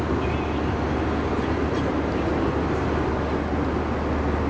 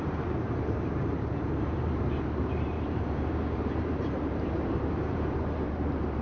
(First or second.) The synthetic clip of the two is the second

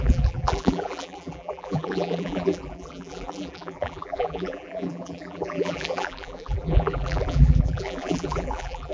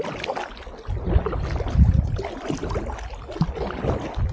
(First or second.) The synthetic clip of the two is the first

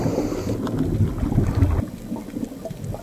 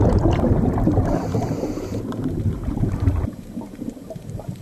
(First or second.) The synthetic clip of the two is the second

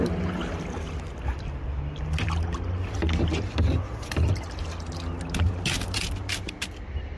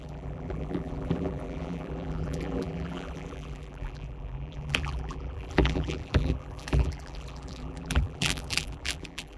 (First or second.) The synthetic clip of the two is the second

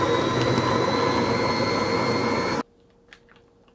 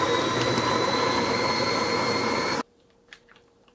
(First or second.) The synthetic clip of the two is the second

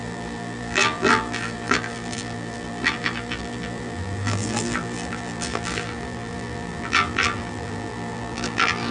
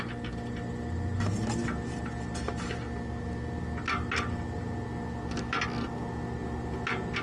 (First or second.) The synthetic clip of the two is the first